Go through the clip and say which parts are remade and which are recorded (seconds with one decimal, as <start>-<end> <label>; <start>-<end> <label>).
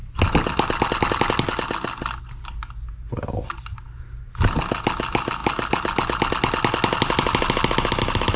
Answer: 0.0-8.4 recorded